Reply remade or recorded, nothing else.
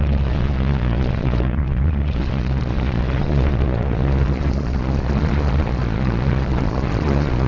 remade